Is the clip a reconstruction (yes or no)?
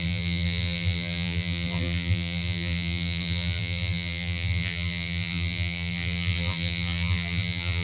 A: yes